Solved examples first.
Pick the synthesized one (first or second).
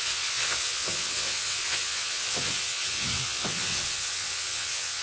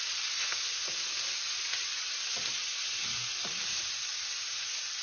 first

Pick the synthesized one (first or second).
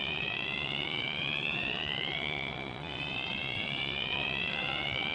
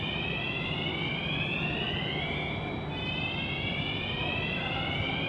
first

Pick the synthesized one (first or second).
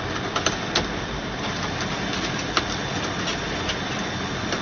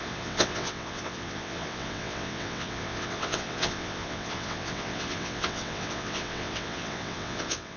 second